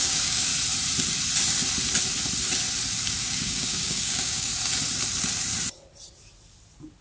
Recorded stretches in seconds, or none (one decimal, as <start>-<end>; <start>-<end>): 0.5-3.2; 4.5-7.0